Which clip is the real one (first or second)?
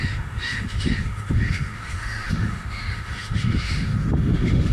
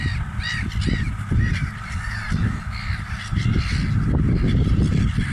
second